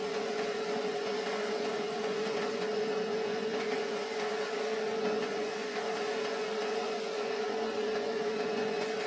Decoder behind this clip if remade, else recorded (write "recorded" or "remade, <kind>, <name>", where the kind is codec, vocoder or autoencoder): remade, vocoder, Vocos